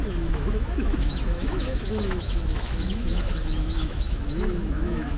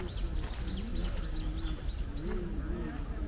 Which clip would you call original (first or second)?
second